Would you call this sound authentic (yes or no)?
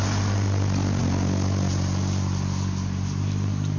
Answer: yes